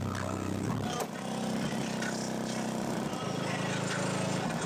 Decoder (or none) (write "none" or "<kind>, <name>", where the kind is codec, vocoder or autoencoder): none